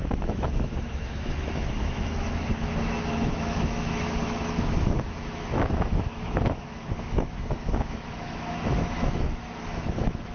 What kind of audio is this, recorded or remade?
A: remade